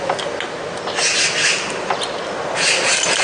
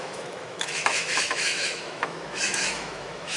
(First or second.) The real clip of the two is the first